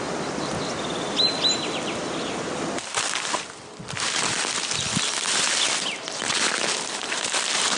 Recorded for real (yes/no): yes